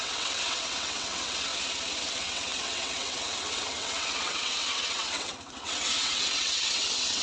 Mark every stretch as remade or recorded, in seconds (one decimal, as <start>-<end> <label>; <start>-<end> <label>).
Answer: 0.0-1.5 remade; 1.5-2.0 recorded; 2.0-7.2 remade